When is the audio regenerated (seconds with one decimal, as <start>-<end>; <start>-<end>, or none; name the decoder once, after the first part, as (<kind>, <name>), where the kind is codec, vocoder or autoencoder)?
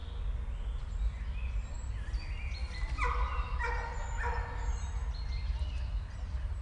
none